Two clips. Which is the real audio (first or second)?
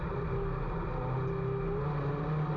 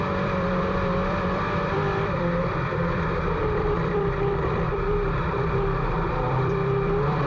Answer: first